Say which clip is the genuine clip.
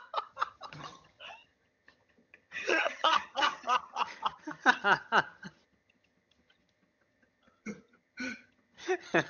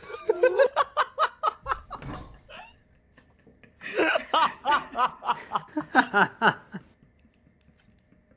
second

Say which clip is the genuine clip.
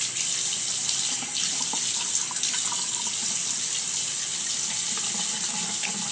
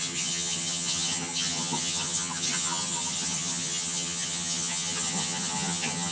first